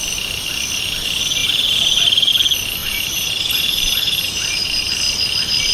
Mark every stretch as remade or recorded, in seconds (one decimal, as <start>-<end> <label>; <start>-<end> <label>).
0.0-1.4 recorded; 1.4-2.3 remade; 2.3-2.8 recorded; 2.8-4.9 remade; 4.9-5.7 recorded